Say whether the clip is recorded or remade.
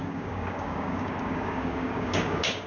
remade